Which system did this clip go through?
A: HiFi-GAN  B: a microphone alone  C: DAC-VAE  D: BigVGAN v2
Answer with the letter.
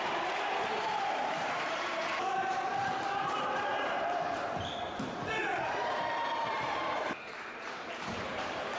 D